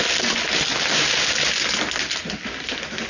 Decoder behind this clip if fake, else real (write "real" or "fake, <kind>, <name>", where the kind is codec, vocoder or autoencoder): real